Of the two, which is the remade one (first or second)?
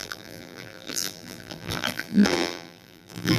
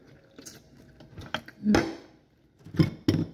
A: first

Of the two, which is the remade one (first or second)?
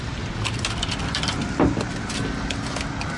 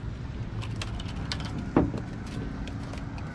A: first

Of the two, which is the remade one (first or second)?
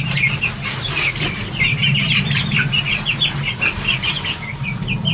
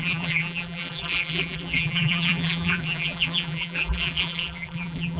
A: second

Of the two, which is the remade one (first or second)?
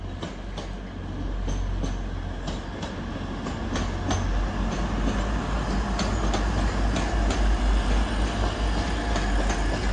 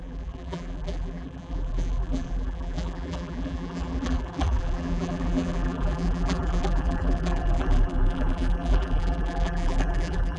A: second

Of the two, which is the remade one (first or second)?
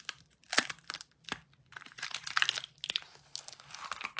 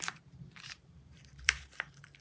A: second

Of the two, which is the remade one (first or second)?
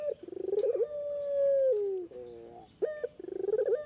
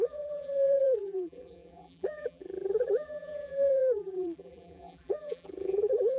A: second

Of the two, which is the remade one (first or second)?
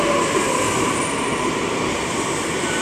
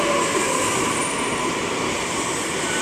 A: first